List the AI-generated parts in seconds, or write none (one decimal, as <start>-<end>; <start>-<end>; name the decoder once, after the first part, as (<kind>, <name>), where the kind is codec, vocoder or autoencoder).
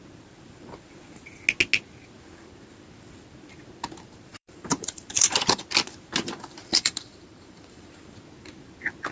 4.3-5.6 (vocoder, BigVGAN v2); 6.6-8.0